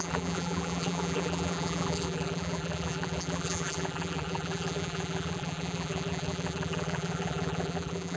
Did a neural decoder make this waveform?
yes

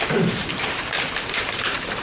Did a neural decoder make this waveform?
yes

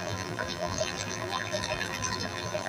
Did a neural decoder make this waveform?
yes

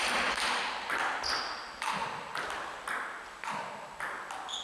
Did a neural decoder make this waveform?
no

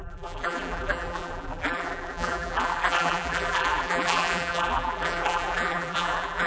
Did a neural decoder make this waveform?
yes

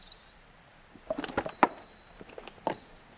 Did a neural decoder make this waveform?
yes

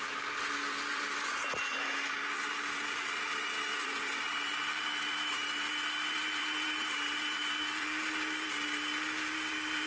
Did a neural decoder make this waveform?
yes